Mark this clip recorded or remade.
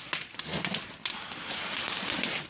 recorded